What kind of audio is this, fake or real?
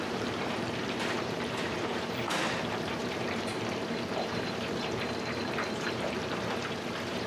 fake